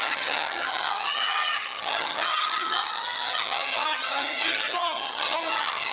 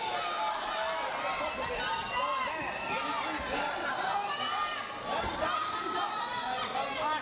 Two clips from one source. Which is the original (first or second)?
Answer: second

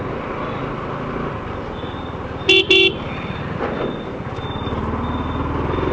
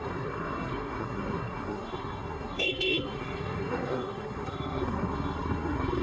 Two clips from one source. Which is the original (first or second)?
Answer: first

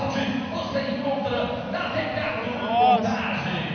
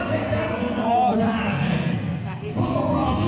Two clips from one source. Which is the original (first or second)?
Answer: first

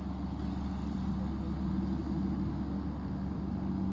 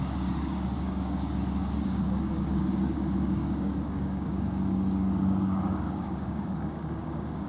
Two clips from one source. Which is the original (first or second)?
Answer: first